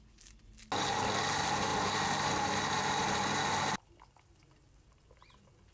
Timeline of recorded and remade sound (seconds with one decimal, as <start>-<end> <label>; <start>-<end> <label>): 0.0-5.7 recorded